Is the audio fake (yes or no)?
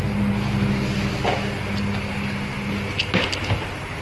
no